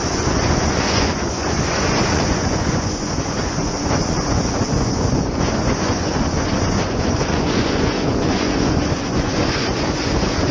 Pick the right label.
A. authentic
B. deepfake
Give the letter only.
B